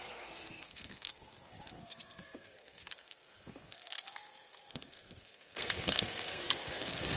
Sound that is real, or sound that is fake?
fake